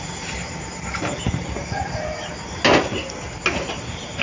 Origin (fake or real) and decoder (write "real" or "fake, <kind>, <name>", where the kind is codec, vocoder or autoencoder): real